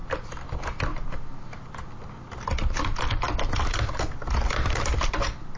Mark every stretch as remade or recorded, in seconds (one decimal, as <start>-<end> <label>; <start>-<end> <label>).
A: 0.0-5.6 recorded